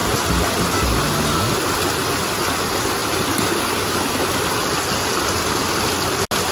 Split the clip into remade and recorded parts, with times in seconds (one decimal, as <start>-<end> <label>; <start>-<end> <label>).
0.0-6.5 recorded